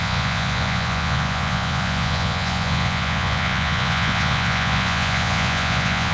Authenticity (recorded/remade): remade